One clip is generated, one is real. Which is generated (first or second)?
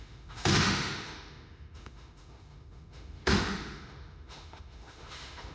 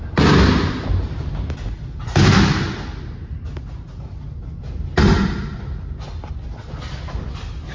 first